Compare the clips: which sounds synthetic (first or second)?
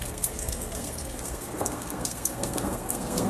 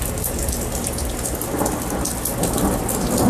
first